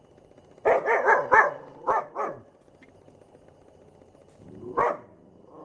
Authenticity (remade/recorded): recorded